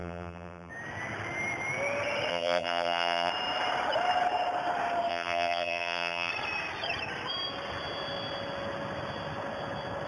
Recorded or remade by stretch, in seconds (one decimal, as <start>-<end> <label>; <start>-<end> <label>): 0.0-0.7 remade; 0.7-2.3 recorded; 2.3-3.3 remade; 3.3-5.1 recorded; 5.1-6.3 remade; 6.3-10.1 recorded